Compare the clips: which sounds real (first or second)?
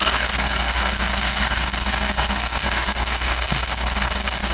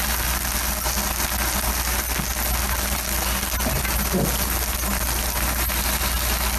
second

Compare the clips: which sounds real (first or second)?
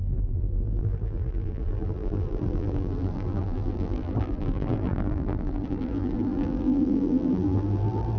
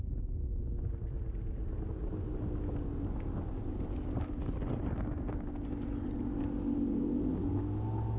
second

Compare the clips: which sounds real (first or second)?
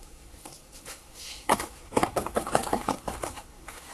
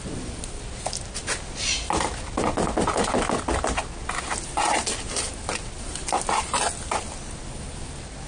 second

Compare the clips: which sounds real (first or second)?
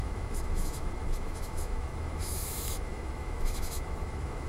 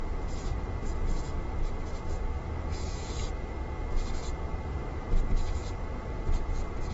second